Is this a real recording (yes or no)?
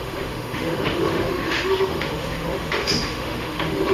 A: no